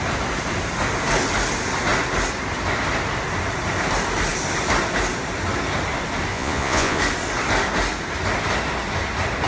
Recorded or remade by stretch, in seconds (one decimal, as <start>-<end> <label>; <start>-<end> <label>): 0.0-6.3 recorded; 6.3-7.0 remade; 7.0-9.5 recorded